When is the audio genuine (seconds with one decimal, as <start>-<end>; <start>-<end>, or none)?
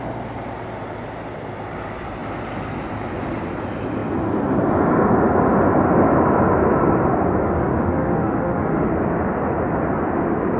0.0-7.4; 8.9-10.6